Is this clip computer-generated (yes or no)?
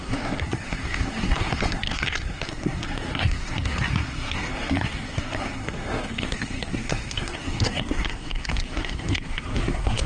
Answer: yes